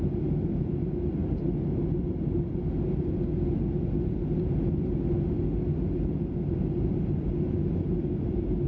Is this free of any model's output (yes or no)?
yes